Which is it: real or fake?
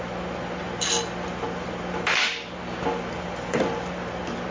real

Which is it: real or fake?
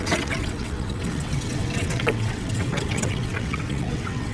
fake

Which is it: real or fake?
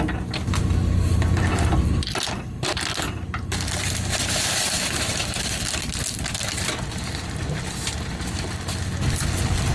real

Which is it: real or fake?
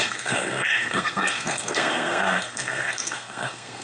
fake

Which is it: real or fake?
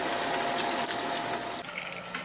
real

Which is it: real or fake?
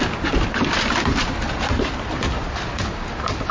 real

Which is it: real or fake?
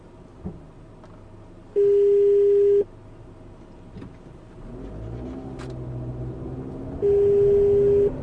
real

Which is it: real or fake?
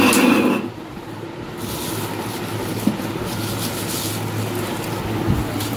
real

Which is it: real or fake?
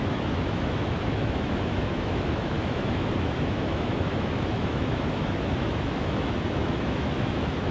fake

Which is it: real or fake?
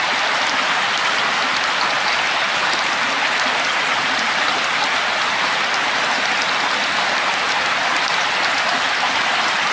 real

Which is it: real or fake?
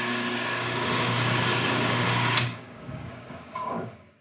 fake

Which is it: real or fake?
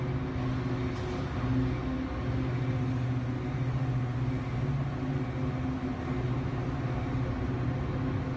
real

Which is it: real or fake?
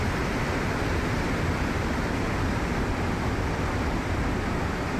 real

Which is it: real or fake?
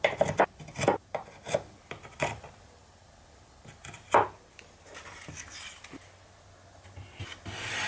real